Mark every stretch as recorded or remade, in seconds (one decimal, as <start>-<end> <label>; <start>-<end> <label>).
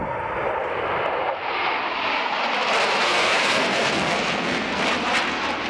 0.0-3.0 recorded; 3.0-4.8 remade; 4.8-5.7 recorded